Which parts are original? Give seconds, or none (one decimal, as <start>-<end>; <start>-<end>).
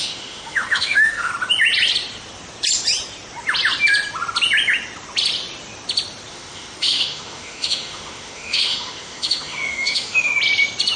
1.3-6.3; 10.3-11.0